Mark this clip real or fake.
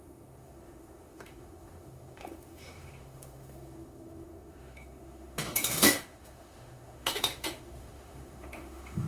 fake